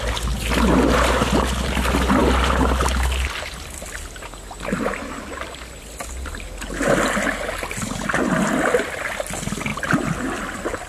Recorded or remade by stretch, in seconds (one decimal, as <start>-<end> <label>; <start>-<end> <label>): 0.0-10.9 recorded